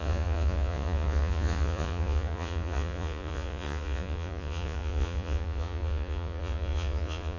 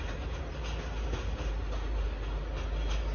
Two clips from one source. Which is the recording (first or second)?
second